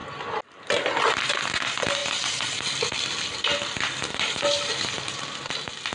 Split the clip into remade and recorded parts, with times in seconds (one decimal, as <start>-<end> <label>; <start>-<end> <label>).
0.0-2.0 recorded; 2.0-5.5 remade; 5.5-5.9 recorded

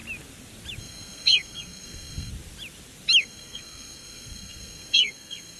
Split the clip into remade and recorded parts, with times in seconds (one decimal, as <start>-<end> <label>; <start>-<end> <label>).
0.0-0.8 recorded; 0.8-2.3 remade; 2.3-3.2 recorded; 3.2-5.6 remade

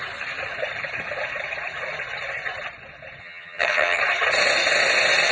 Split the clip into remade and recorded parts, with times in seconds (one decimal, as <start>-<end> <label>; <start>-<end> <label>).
0.0-3.2 recorded; 3.2-4.0 remade; 4.0-5.3 recorded